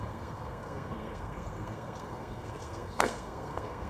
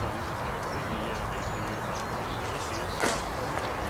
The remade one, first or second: first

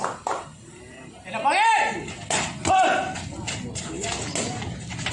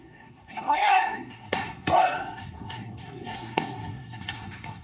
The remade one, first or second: second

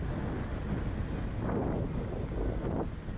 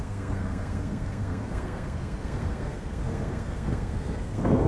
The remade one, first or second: second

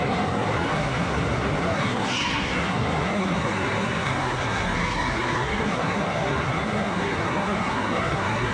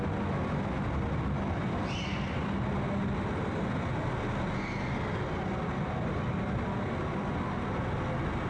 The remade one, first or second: first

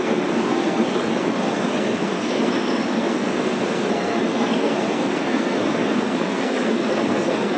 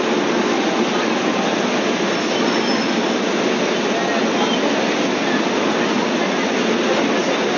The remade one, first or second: first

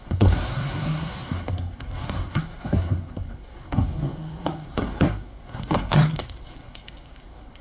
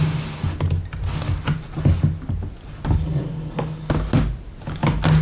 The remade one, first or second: first